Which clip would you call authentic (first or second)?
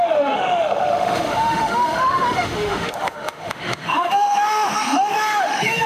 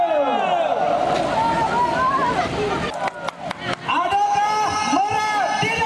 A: second